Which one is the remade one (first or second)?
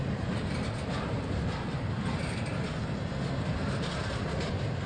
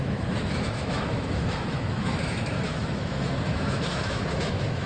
second